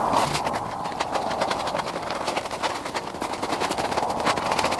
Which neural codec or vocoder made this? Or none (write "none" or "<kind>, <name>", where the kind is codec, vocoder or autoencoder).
none